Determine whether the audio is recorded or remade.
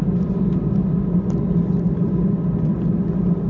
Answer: recorded